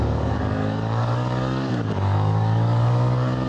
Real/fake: fake